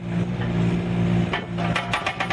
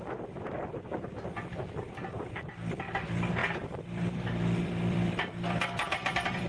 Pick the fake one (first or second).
second